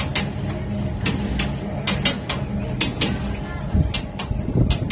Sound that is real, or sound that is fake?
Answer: real